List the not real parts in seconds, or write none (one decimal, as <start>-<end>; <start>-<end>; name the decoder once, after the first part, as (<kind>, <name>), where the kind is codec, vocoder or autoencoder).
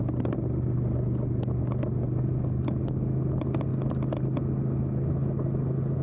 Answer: none